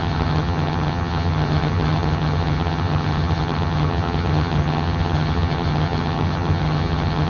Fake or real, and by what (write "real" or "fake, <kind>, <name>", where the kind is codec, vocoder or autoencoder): fake, vocoder, HiFi-GAN